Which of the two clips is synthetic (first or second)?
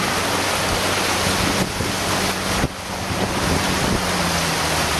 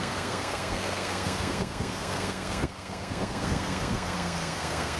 second